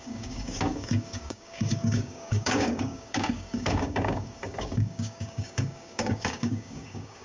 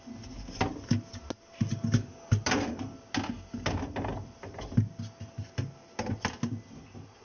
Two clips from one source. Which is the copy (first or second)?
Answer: first